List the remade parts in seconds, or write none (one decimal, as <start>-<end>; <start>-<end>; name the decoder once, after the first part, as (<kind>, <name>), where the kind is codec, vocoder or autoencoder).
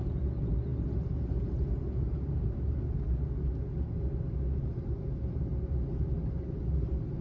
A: none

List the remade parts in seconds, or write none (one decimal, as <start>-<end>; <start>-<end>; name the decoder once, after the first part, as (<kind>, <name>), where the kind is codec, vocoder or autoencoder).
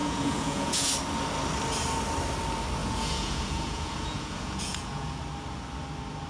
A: 0.0-0.9 (vocoder, Vocos); 2.8-5.2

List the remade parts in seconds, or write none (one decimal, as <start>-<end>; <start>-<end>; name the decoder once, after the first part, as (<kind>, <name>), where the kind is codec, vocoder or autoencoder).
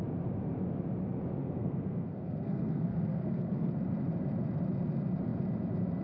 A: 1.4-3.7 (codec, SNAC)